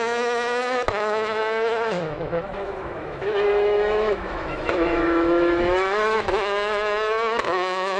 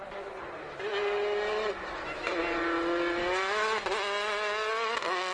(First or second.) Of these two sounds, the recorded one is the second